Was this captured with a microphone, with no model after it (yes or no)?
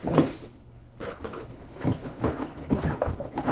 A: no